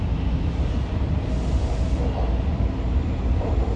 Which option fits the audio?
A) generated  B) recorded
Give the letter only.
B